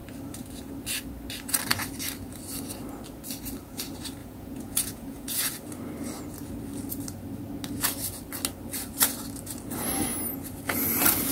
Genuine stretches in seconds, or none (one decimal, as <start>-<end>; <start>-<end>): 0.0-4.2; 5.5-11.3